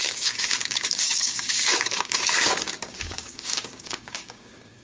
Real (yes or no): no